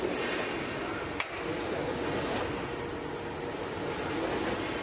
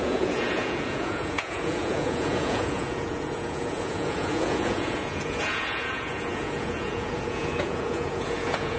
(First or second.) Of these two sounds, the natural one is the first